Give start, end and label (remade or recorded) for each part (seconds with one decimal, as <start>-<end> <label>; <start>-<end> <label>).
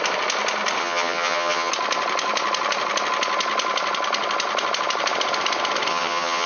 0.0-0.8 recorded; 0.8-1.7 remade; 1.7-5.9 recorded; 5.9-6.5 remade